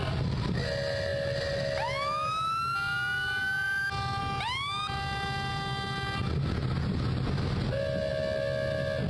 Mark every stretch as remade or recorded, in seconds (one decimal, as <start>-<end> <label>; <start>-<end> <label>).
0.0-9.1 recorded